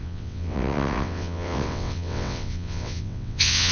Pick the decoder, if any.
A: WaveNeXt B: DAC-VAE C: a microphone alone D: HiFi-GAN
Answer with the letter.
A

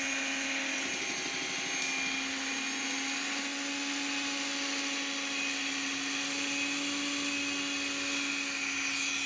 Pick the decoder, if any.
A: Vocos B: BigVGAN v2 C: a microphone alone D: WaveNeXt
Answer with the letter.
C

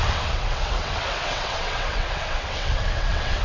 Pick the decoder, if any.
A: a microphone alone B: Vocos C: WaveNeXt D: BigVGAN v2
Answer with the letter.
C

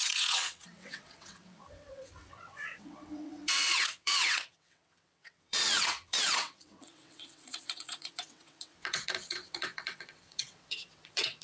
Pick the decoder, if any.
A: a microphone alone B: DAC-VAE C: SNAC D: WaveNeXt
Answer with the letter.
D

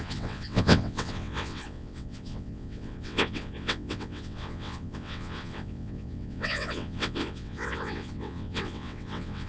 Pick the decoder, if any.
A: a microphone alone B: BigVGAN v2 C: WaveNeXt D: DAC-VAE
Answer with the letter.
C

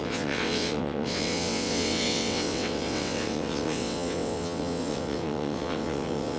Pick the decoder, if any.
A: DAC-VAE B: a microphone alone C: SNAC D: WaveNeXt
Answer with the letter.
D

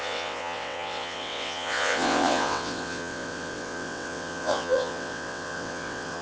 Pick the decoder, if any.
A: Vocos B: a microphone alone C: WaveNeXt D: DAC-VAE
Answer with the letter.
C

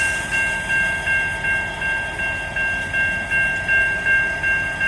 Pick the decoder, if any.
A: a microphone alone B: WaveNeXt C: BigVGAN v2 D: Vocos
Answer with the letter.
A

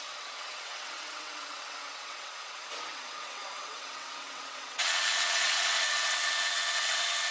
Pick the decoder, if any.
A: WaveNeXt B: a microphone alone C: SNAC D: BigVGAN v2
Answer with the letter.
A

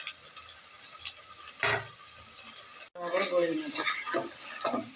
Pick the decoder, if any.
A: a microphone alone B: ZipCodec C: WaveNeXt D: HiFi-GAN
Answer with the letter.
A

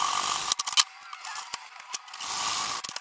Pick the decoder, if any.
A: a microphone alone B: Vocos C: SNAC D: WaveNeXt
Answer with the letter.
A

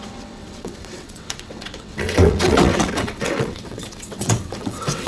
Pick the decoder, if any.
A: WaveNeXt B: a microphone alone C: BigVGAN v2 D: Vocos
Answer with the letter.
A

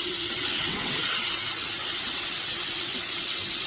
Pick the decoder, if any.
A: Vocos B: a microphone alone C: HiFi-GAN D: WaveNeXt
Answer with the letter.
D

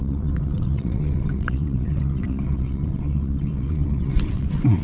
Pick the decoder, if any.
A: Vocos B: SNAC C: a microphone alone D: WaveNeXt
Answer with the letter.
D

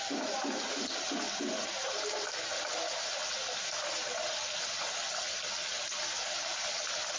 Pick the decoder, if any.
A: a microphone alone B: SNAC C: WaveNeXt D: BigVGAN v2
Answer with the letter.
A